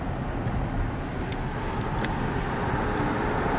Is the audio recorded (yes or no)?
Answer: yes